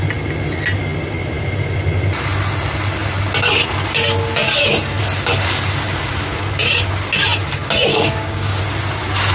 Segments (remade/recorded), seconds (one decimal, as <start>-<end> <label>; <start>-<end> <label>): 0.0-7.9 recorded; 7.9-8.6 remade; 8.6-9.3 recorded